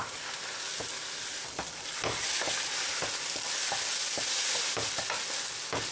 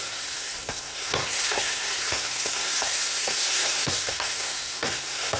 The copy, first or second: second